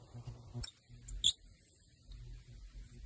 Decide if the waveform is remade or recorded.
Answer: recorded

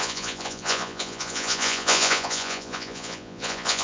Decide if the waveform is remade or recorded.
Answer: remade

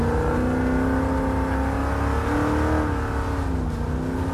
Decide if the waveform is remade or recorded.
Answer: recorded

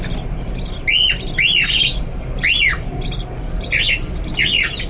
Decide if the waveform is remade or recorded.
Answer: recorded